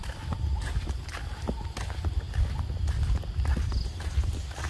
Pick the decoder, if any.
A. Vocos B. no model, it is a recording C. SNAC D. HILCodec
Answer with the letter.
B